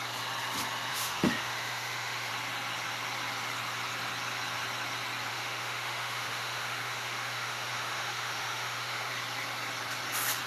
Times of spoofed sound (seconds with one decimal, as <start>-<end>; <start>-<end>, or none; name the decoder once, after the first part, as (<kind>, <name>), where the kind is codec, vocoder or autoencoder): 0.9-2.3 (autoencoder, DAC-VAE); 5.3-9.1